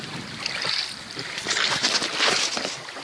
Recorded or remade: recorded